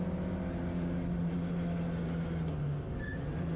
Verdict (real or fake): real